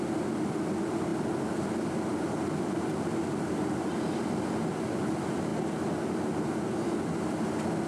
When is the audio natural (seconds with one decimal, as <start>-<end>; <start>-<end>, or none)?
0.0-7.9